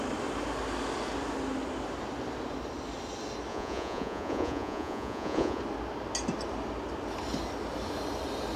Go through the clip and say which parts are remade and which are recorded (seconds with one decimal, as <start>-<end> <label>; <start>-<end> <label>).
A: 0.0-3.5 recorded; 3.5-5.6 remade; 5.6-8.6 recorded